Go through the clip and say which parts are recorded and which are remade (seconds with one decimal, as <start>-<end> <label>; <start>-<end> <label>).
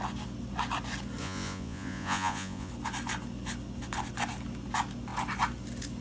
0.0-1.2 recorded; 1.2-2.7 remade; 2.7-6.0 recorded